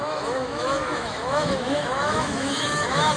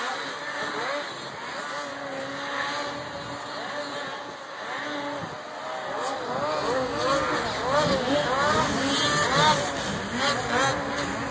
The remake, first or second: first